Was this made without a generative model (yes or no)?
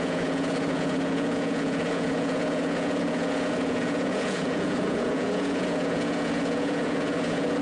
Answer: no